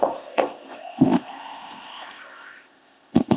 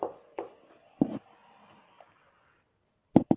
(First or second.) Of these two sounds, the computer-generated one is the first